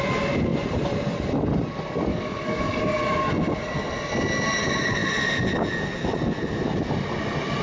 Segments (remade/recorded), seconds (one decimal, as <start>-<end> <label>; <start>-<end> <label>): 0.0-2.1 recorded; 2.1-3.0 remade; 3.0-7.6 recorded